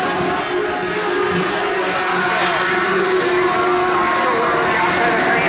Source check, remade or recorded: recorded